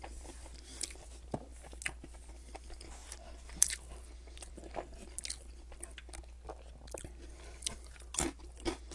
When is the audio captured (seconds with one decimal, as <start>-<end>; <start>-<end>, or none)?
0.0-8.9